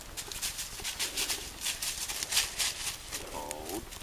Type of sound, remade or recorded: recorded